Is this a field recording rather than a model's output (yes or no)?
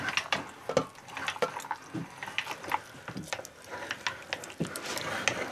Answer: yes